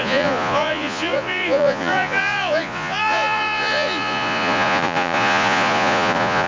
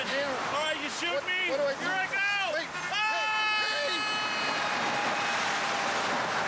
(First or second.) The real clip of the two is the second